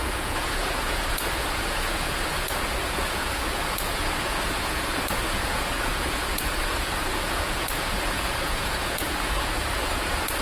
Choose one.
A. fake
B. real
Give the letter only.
A